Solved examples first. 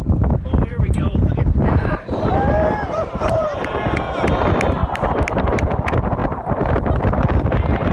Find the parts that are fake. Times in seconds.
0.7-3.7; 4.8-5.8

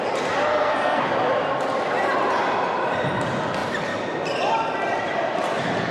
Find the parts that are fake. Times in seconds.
0.5-1.1

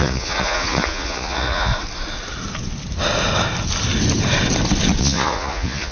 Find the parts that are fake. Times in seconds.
0.0-1.7; 5.0-5.9

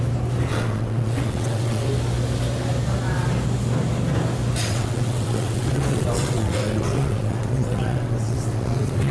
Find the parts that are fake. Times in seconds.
0.5-1.9; 4.6-9.1